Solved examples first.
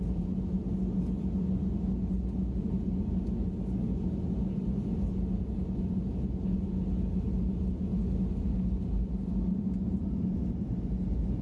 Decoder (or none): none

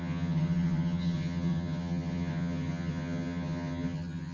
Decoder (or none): vocoder, HiFi-GAN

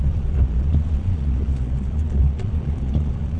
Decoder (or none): vocoder, Vocos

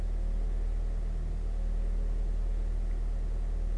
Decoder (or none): none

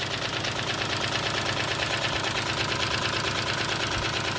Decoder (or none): none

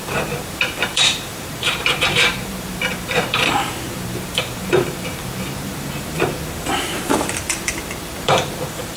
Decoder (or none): vocoder, BigVGAN v2